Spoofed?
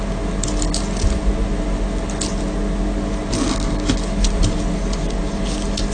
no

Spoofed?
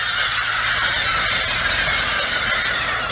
no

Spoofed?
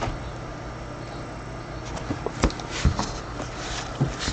no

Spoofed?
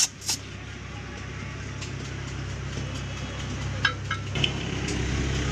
no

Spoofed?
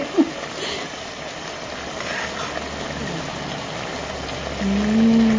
no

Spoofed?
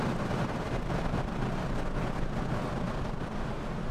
yes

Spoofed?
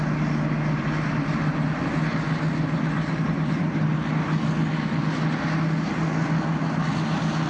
no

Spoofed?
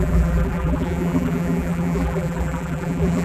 yes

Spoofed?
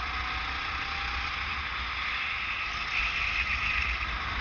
no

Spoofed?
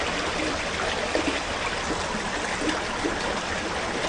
yes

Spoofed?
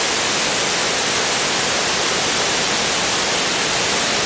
no